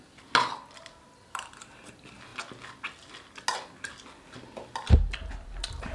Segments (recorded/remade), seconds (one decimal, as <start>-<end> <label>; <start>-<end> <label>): 0.0-5.9 recorded